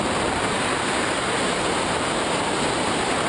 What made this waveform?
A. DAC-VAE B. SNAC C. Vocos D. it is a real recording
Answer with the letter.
D